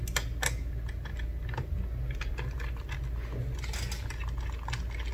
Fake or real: real